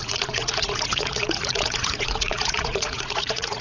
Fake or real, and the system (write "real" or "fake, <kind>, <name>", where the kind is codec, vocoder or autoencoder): fake, vocoder, Vocos